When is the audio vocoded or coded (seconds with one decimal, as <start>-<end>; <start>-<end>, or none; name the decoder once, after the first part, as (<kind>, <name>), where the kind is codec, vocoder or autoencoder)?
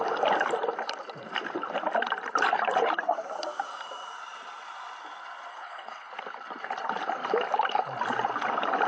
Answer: 5.5-6.1 (codec, HILCodec)